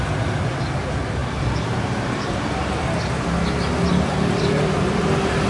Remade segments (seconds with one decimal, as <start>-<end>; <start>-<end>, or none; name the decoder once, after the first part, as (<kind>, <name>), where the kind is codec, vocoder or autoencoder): 1.2-2.4 (vocoder, BigVGAN v2); 3.9-5.0